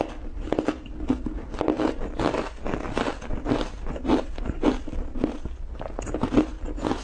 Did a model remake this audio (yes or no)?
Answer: no